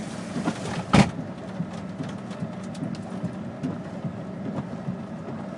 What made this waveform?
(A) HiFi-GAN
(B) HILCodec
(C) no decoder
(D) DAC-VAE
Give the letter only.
C